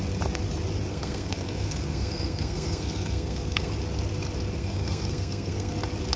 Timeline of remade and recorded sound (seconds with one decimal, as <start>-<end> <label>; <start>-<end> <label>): 0.0-0.9 recorded; 0.9-3.7 remade; 3.7-4.6 recorded; 4.6-5.7 remade; 5.7-6.2 recorded